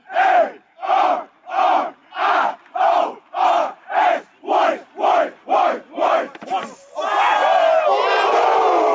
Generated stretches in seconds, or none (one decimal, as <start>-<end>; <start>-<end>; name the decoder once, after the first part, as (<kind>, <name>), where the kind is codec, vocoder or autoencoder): none